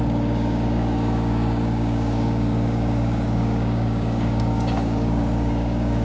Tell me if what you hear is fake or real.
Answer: fake